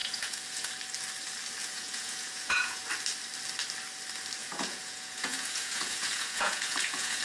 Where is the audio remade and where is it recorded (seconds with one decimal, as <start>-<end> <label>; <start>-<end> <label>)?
0.0-0.7 remade; 0.7-1.6 recorded; 1.6-2.8 remade; 2.8-4.4 recorded; 4.4-7.2 remade